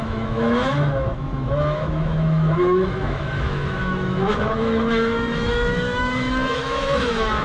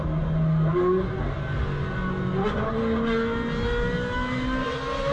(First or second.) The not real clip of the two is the first